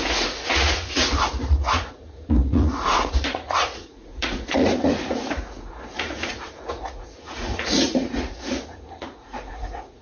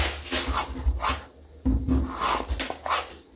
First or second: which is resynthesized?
first